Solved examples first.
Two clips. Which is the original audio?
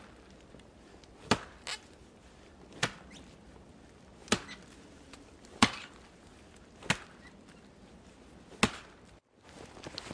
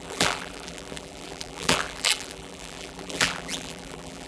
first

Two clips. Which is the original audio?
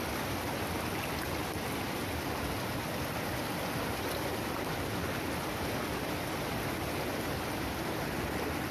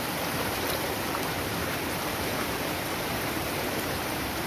first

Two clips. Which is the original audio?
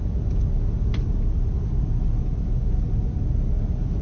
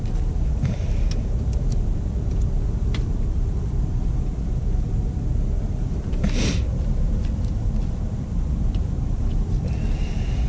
first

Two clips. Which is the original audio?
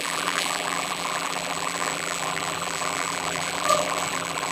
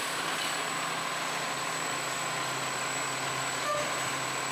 second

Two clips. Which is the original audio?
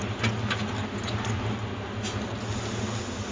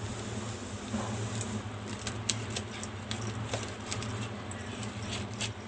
first